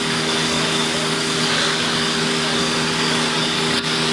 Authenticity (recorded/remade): remade